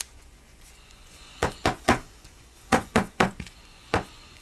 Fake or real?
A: fake